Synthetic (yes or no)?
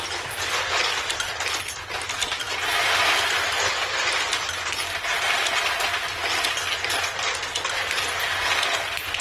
no